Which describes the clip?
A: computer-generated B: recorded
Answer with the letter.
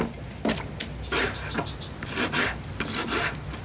B